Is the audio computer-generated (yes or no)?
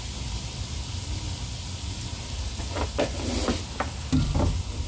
no